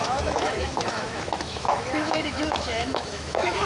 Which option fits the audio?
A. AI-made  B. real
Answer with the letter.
A